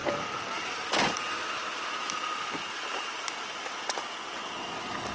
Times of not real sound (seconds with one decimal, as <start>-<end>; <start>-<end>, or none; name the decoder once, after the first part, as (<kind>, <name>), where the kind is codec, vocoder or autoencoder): none

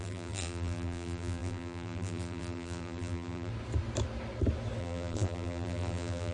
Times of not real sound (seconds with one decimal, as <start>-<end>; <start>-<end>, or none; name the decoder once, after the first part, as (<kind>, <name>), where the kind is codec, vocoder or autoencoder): 0.0-3.5 (vocoder, BigVGAN v2); 4.8-6.3

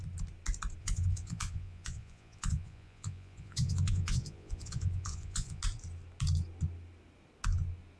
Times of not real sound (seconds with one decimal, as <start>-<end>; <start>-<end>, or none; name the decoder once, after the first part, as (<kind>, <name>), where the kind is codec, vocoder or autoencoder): 0.8-5.6 (vocoder, Vocos)

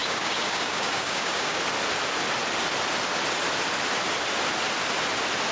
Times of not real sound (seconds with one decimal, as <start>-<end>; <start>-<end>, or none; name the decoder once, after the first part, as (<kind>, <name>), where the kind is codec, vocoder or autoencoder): 0.0-1.6 (codec, DAC)